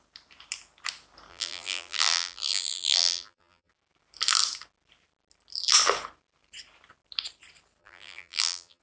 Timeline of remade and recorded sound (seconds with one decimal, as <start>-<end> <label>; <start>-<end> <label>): 0.0-1.3 recorded; 1.3-3.7 remade; 3.7-7.8 recorded; 7.8-8.8 remade